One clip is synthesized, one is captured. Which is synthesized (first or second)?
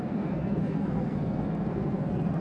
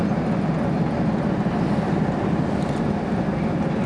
first